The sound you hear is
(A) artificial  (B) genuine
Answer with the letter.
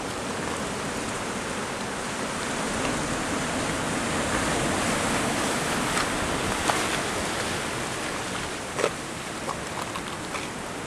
B